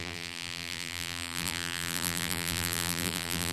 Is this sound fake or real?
fake